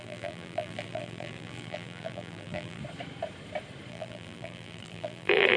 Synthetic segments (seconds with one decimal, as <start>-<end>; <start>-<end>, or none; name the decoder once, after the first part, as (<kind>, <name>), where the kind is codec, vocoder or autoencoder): 0.0-2.8 (vocoder, BigVGAN v2); 3.9-5.6